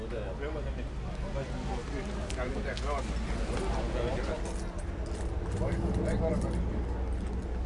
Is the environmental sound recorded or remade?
recorded